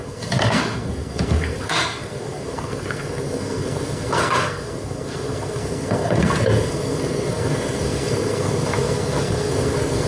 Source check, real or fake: fake